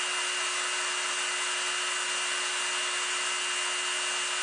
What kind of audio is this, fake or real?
real